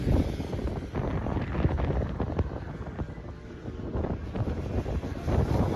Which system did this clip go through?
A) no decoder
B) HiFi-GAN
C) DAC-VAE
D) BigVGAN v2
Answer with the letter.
A